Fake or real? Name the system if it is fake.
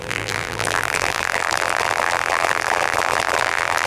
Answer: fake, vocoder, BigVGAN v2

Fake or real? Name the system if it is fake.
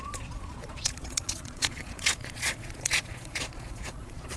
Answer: fake, vocoder, Vocos